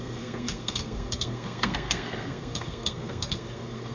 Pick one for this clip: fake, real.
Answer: fake